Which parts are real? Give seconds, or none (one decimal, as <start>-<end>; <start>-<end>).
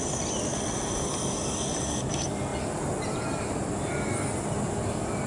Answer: 0.0-5.3